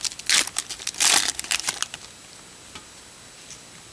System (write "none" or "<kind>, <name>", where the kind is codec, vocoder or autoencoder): none